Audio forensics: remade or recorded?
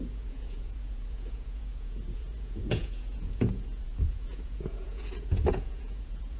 remade